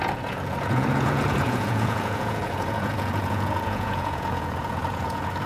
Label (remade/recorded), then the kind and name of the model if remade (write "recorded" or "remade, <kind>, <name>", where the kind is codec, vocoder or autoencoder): remade, vocoder, Vocos